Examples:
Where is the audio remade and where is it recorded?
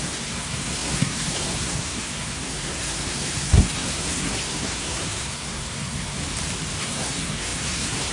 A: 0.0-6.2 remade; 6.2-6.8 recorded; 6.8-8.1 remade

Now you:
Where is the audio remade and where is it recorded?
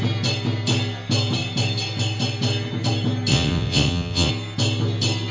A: 0.0-3.3 recorded; 3.3-4.3 remade; 4.3-5.3 recorded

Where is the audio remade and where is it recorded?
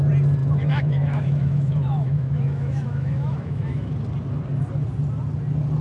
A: 0.0-0.4 recorded; 0.4-3.9 remade; 3.9-5.8 recorded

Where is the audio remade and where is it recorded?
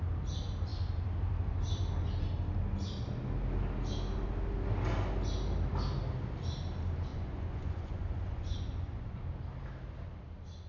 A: 0.0-7.1 recorded; 7.1-9.2 remade; 9.2-10.7 recorded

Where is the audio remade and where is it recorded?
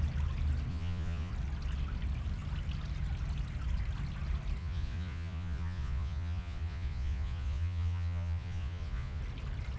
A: 0.0-0.7 recorded; 0.7-1.3 remade; 1.3-4.6 recorded; 4.6-9.2 remade; 9.2-9.8 recorded